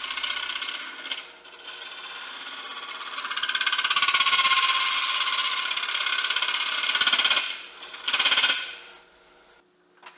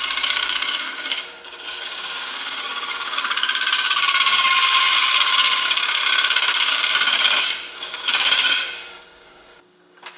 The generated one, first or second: second